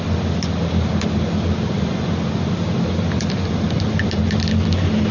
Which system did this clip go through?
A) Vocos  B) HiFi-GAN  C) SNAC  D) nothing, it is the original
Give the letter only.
D